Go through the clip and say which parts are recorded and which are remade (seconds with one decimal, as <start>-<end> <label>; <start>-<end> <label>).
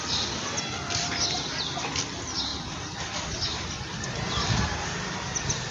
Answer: 0.0-2.5 remade; 2.5-4.6 recorded; 4.6-5.7 remade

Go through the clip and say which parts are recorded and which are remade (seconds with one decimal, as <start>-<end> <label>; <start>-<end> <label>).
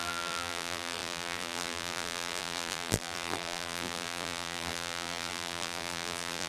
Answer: 0.0-6.5 remade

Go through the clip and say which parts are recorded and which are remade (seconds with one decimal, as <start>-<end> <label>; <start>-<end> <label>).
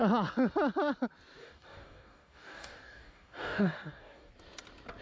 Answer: 0.0-1.4 recorded; 1.4-4.3 remade; 4.3-5.0 recorded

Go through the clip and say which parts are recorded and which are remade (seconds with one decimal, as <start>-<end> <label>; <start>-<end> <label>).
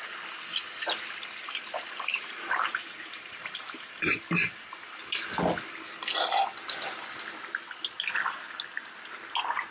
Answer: 0.0-1.4 recorded; 1.4-5.0 remade; 5.0-9.7 recorded